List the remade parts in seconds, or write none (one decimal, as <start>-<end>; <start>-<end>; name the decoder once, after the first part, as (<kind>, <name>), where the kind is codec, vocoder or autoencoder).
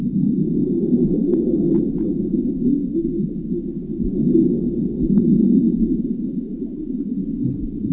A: 0.0-1.3 (vocoder, BigVGAN v2); 4.8-7.9